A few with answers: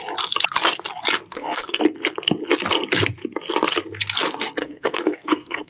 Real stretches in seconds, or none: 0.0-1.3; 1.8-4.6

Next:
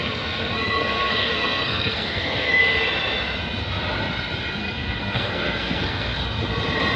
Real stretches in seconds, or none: 2.6-4.6; 6.2-7.0

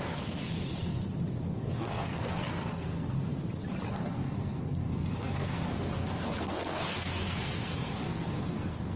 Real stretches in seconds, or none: 1.0-1.5; 3.3-3.9

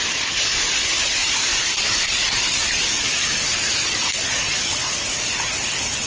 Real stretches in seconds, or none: 0.0-6.1

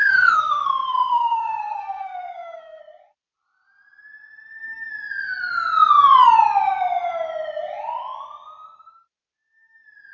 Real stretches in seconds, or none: 2.8-10.1

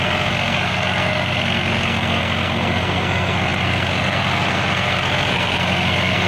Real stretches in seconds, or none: none

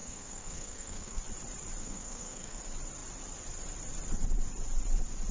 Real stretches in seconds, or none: 1.2-1.8; 2.6-5.3